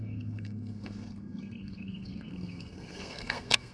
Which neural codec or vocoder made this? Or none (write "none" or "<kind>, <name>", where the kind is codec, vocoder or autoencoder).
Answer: codec, SNAC